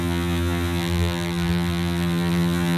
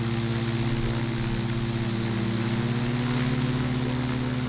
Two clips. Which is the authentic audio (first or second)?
second